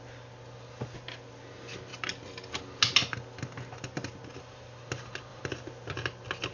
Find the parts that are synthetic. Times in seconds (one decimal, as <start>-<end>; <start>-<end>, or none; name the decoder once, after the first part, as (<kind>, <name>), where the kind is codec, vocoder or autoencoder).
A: none